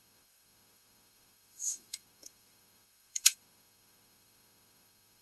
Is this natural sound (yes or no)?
no